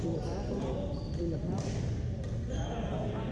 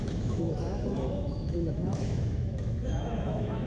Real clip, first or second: first